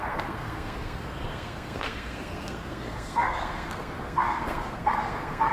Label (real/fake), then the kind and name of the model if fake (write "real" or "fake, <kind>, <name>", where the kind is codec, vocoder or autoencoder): fake, codec, SNAC